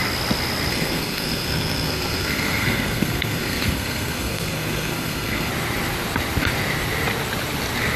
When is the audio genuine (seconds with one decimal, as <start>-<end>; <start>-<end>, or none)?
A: 0.0-0.7; 5.5-8.0